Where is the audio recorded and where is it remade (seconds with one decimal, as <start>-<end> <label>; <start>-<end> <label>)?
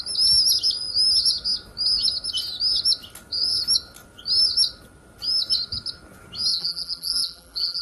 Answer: 0.0-6.5 recorded; 6.5-7.8 remade